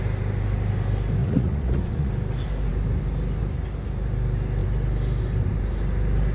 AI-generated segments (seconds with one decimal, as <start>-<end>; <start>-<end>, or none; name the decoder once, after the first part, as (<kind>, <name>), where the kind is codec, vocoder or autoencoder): 1.2-2.1 (vocoder, Vocos)